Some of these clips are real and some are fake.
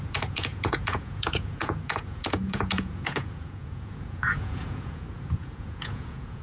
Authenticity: fake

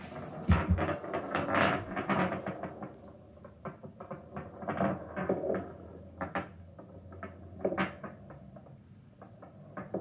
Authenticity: real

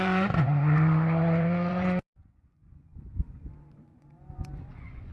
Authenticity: fake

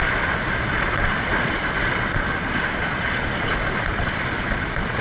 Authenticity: fake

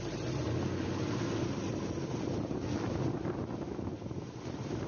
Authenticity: real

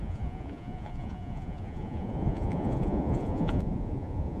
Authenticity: fake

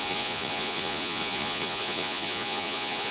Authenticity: fake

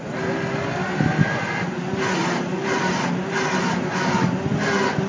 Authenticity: real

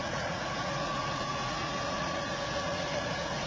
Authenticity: fake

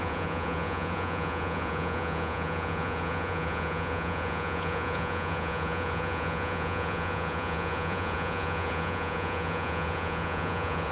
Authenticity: fake